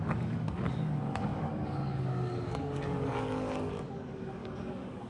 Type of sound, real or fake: fake